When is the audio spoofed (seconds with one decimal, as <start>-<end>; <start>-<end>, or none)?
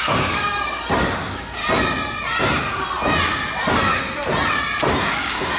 0.0-1.6; 5.0-5.6